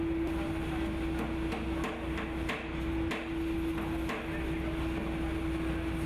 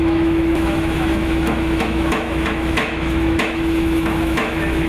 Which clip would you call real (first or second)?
first